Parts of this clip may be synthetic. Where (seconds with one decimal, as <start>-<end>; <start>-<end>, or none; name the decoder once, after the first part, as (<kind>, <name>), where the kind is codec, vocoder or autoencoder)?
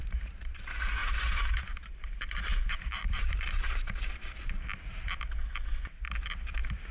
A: 0.0-0.6 (vocoder, BigVGAN v2); 1.0-4.3